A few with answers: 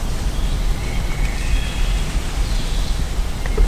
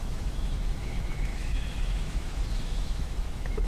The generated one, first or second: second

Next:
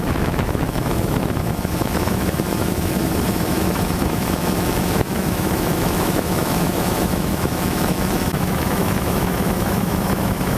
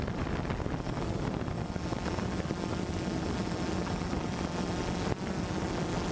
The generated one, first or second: first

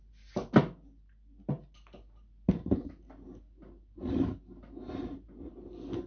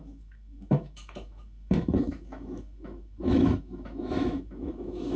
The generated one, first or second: second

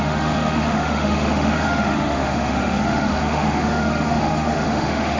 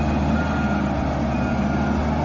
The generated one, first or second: first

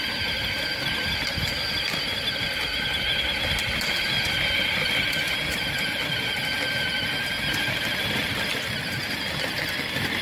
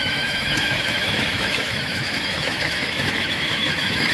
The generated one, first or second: second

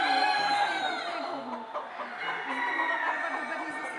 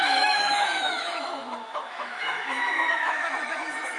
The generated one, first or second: second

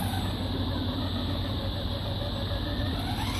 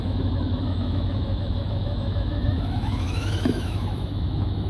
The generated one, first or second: second